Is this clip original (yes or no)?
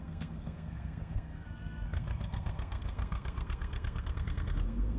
no